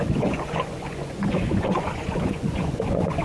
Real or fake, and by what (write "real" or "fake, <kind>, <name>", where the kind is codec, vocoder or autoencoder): fake, vocoder, Vocos